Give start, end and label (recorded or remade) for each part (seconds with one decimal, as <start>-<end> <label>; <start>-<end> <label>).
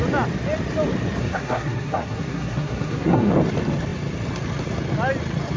0.0-1.2 recorded; 1.2-3.3 remade; 3.3-5.6 recorded